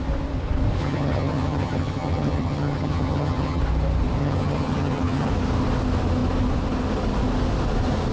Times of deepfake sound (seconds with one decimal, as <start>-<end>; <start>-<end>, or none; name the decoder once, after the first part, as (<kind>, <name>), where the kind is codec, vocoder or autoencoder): 0.8-3.6 (vocoder, HiFi-GAN); 4.2-5.3